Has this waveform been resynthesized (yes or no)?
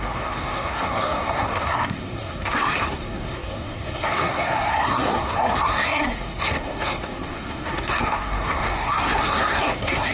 yes